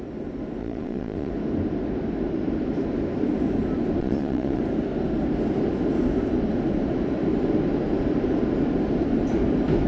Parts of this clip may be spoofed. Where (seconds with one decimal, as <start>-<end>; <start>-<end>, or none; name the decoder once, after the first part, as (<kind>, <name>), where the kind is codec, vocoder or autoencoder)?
0.6-1.3 (vocoder, Vocos); 4.0-4.6